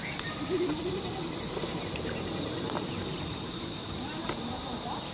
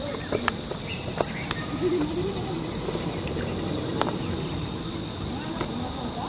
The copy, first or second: first